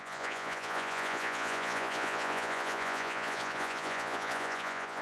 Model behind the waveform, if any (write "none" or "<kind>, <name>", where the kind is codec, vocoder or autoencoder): vocoder, Vocos